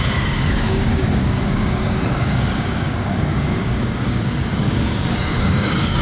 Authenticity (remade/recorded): remade